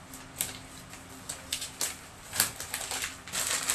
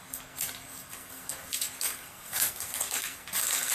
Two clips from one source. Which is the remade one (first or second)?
second